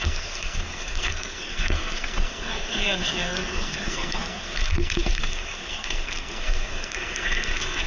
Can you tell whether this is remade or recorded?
remade